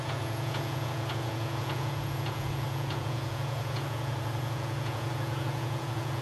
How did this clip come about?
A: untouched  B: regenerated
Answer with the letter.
B